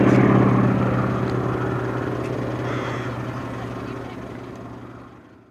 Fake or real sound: real